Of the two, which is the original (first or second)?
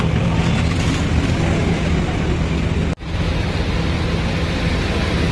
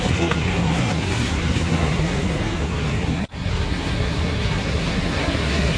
first